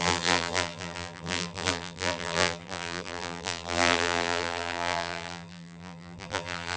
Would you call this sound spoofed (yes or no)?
yes